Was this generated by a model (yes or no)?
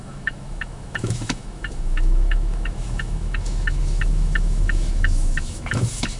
yes